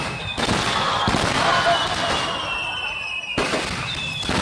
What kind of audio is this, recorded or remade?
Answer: remade